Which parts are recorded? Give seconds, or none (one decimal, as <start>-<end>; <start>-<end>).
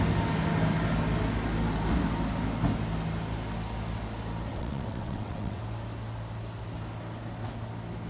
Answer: 0.0-4.5; 5.6-8.1